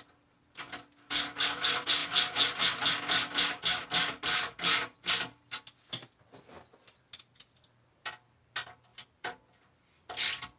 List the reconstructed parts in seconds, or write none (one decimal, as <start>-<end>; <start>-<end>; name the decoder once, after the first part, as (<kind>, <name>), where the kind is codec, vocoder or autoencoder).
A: none